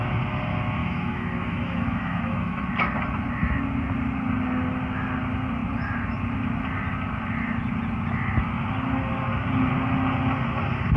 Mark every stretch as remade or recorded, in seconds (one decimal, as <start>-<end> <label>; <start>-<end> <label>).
0.0-0.8 recorded; 0.8-2.6 remade; 2.6-11.0 recorded